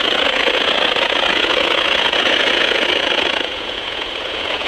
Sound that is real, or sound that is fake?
fake